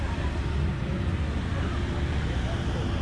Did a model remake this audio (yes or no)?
no